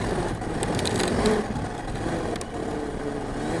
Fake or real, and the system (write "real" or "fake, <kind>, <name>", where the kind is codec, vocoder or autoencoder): real